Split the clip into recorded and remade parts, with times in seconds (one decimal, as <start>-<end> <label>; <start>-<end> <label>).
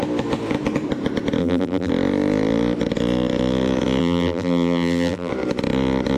0.0-1.4 recorded; 1.4-1.9 remade; 1.9-4.0 recorded; 4.0-5.3 remade; 5.3-6.2 recorded